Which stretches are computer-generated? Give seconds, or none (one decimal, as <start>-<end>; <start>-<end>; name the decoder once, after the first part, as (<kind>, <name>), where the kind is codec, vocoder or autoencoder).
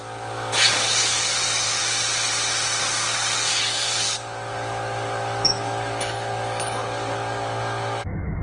0.0-1.8 (codec, DAC); 2.8-8.4